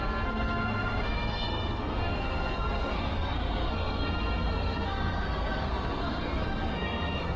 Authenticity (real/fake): fake